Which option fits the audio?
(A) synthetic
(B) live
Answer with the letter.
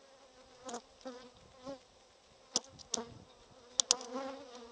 B